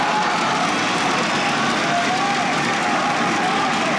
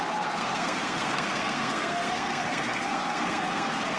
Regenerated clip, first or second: second